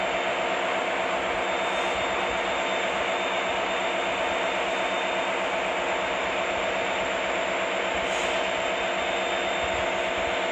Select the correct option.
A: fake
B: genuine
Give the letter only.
B